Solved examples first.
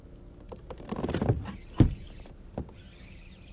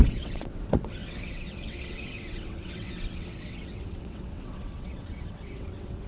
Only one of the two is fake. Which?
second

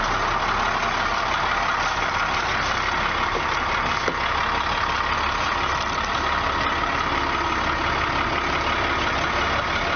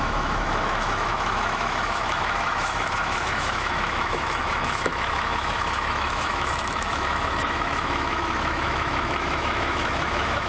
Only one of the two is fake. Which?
second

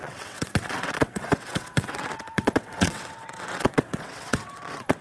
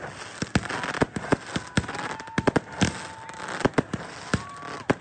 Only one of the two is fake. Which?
first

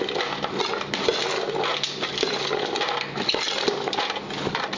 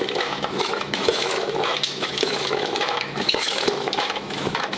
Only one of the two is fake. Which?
second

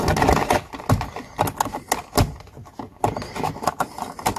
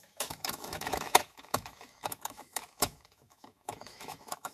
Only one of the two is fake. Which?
second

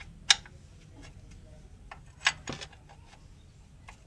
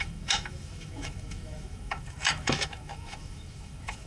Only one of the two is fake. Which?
second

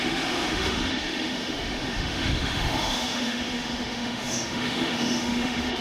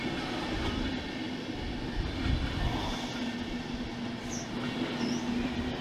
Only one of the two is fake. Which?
first